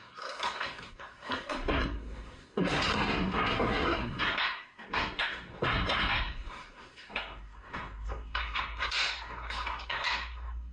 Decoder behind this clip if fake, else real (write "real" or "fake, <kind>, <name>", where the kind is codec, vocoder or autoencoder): fake, codec, SNAC